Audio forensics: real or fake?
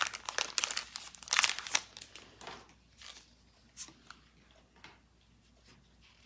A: real